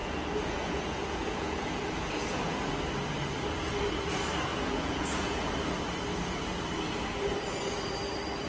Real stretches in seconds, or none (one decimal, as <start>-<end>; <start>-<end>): 2.7-4.5; 5.5-8.5